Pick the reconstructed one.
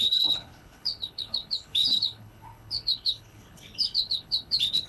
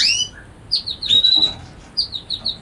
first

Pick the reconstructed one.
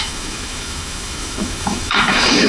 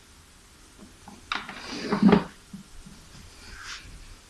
first